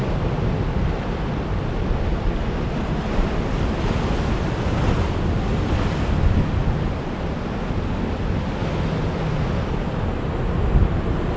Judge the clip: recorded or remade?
recorded